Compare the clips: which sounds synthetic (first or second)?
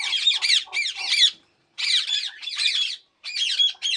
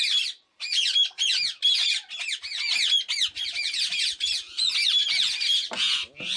first